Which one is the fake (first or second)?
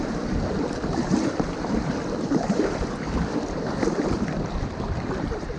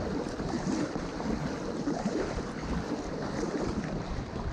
first